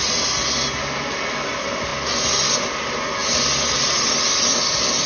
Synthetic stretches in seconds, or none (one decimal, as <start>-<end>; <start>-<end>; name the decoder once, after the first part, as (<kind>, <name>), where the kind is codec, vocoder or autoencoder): none